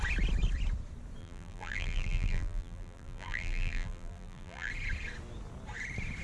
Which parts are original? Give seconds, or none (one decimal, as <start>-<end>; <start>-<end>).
0.0-1.2; 4.7-6.2